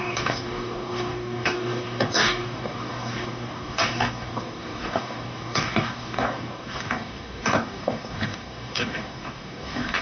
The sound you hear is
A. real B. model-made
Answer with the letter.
B